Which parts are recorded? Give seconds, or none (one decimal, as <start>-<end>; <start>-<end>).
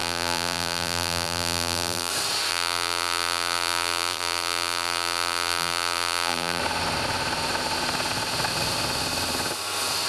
2.1-2.5; 6.6-10.1